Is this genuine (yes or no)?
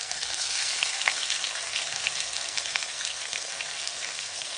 no